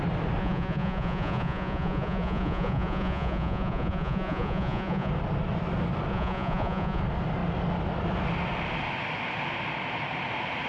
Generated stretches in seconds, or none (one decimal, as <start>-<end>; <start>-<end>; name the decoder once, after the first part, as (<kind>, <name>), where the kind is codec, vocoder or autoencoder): 0.4-5.1 (vocoder, Vocos); 6.1-7.0